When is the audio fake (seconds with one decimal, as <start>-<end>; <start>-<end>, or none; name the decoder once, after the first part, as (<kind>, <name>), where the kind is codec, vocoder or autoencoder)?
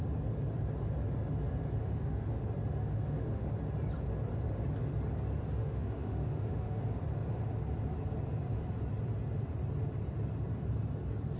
1.8-2.4 (autoencoder, DAC-VAE); 2.8-3.5; 5.6-6.8